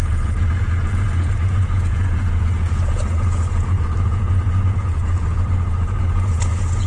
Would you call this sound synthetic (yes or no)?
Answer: yes